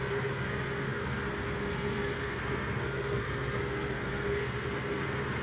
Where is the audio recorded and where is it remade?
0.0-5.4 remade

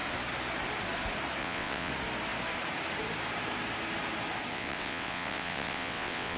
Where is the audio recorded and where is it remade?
0.0-1.4 recorded; 1.4-1.9 remade; 1.9-4.5 recorded; 4.5-6.4 remade

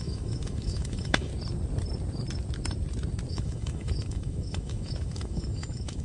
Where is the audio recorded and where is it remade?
0.0-1.3 remade; 1.3-3.3 recorded; 3.3-6.0 remade

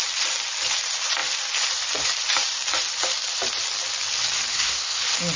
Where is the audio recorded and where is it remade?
0.0-4.5 recorded; 4.5-5.0 remade; 5.0-5.4 recorded